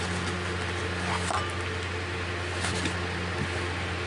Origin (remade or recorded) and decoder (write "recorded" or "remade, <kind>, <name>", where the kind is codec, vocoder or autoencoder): recorded